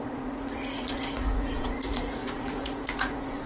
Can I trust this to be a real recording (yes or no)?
no